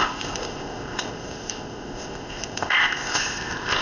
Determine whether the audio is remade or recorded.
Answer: remade